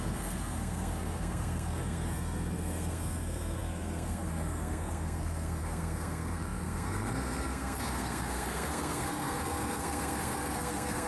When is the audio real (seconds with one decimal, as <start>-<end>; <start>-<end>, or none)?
none